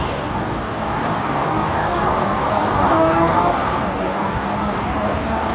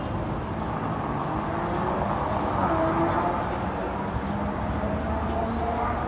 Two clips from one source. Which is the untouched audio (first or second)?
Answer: second